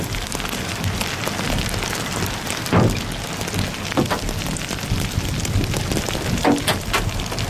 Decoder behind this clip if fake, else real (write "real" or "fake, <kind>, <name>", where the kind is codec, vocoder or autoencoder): real